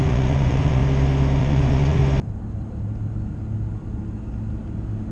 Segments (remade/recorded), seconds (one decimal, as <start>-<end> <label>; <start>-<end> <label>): 0.0-0.8 remade; 0.8-1.4 recorded; 1.4-2.0 remade; 2.0-5.1 recorded